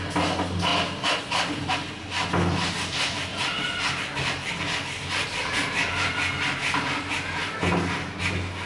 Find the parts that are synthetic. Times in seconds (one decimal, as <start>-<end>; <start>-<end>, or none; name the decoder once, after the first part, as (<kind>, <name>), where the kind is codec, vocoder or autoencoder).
none